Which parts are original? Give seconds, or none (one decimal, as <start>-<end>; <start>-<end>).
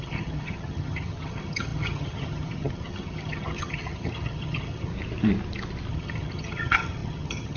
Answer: 4.9-5.9